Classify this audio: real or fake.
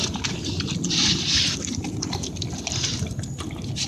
real